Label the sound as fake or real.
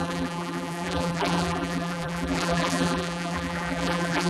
fake